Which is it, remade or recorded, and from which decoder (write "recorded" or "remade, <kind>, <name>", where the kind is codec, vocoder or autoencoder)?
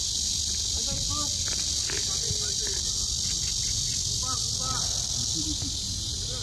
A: recorded